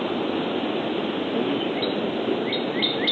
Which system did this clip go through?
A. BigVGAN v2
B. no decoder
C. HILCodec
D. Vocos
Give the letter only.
B